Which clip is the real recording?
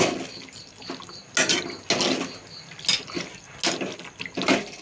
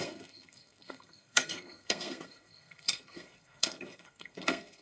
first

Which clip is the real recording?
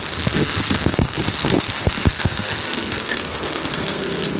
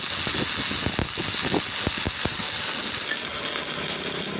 second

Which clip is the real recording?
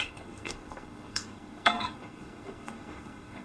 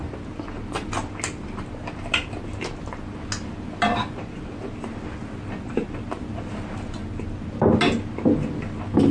second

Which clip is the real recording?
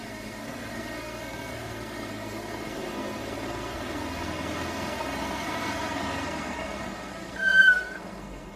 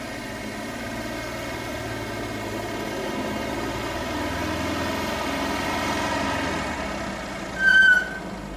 second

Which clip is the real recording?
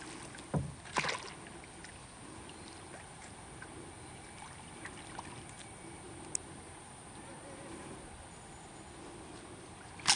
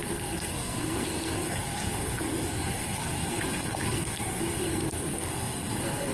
first